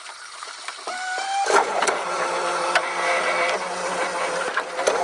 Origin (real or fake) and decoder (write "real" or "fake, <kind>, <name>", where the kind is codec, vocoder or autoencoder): fake, vocoder, BigVGAN v2